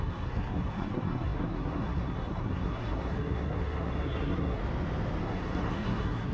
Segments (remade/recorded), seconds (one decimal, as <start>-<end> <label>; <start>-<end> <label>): 0.0-4.6 remade; 4.6-5.2 recorded; 5.2-6.3 remade